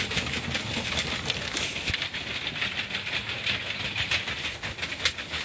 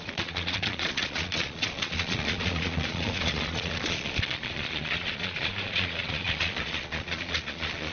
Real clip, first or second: first